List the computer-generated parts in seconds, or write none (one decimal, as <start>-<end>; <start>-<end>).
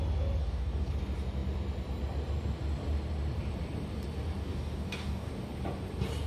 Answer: 0.4-0.9; 4.4-5.3